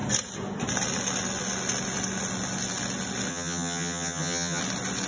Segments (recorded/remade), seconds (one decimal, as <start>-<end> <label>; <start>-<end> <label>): 0.0-3.3 recorded; 3.3-4.6 remade; 4.6-5.1 recorded